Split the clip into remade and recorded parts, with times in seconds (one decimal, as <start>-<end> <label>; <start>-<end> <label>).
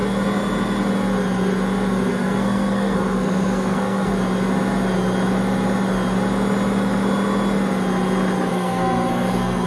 0.0-2.1 recorded; 2.1-4.1 remade; 4.1-8.5 recorded; 8.5-9.7 remade